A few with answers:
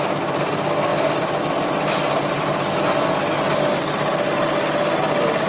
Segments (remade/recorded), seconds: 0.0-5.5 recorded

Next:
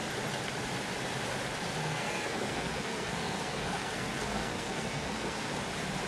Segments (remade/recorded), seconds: 0.0-1.8 recorded; 1.8-5.5 remade; 5.5-6.1 recorded